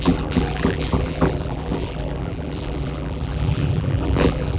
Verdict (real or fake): fake